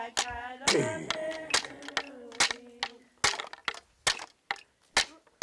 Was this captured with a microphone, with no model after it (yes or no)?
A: yes